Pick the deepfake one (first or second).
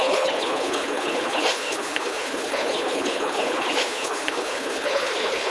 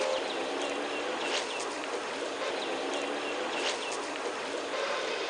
first